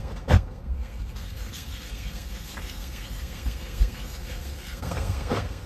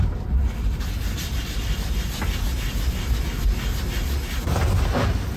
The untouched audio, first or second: second